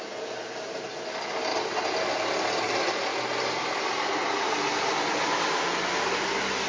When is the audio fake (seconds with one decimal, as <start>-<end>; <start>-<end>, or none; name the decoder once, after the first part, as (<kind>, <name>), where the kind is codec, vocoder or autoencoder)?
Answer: none